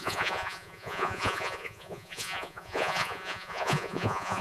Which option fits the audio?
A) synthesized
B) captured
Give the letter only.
A